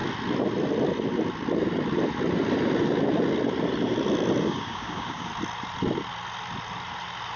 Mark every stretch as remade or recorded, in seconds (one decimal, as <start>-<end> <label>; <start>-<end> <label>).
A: 0.0-4.4 recorded; 4.4-5.3 remade; 5.3-7.4 recorded